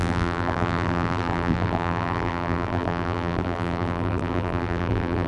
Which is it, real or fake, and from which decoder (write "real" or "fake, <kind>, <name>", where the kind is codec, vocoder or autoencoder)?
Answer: fake, vocoder, BigVGAN v2